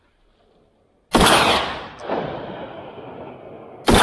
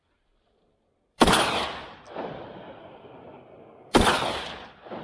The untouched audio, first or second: first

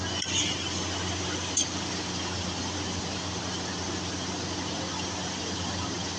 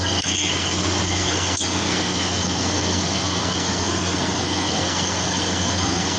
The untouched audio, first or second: first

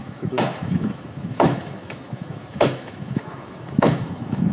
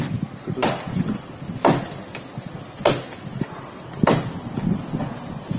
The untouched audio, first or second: second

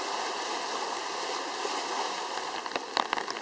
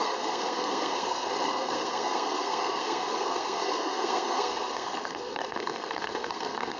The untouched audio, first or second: first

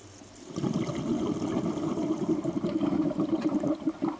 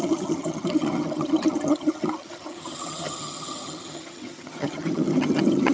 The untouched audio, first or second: first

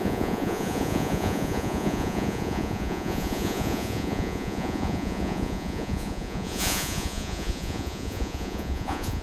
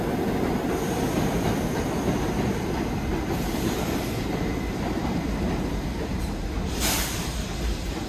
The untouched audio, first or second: second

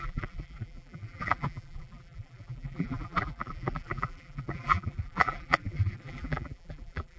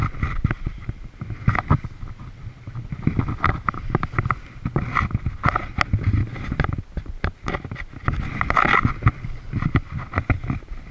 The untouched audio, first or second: second